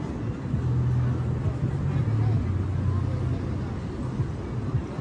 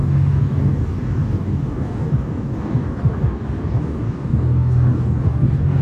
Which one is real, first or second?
first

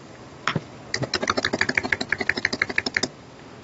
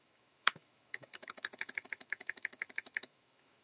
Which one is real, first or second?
first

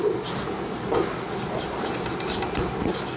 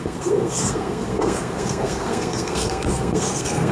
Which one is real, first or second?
first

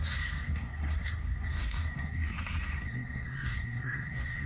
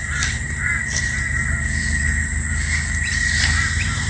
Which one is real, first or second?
second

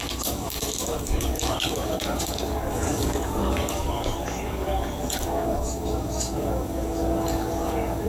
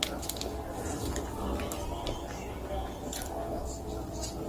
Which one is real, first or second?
second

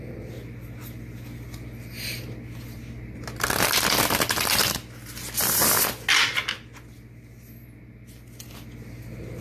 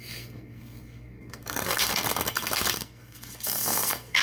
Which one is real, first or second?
first